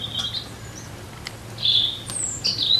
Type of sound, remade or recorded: remade